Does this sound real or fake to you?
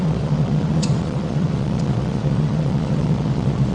fake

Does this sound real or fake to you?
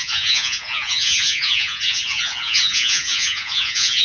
fake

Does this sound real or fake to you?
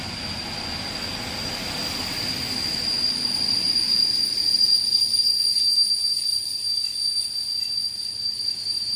real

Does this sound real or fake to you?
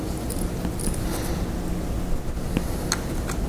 real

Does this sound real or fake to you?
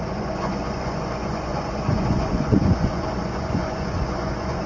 fake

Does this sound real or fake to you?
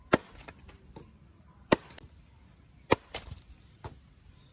real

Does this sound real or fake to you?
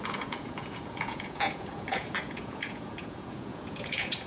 fake